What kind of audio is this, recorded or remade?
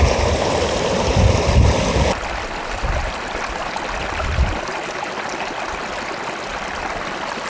remade